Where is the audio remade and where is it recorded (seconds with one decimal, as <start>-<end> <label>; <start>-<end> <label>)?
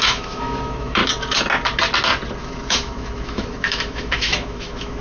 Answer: 0.0-1.0 remade; 1.0-2.4 recorded; 2.4-5.0 remade